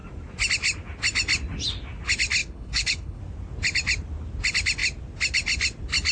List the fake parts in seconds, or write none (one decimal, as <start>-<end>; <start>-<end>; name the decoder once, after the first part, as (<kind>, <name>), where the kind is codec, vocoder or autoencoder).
2.4-3.2 (codec, HILCodec)